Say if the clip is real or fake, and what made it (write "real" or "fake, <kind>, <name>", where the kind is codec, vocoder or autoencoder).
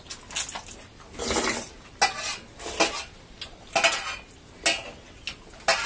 real